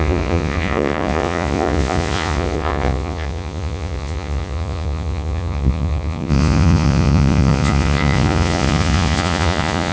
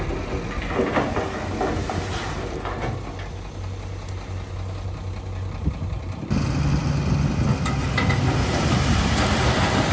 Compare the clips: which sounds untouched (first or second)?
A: second